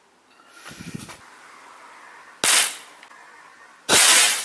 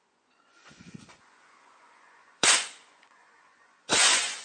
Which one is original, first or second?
first